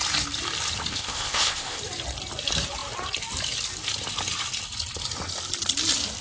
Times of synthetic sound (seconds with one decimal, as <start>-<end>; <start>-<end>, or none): 0.9-1.8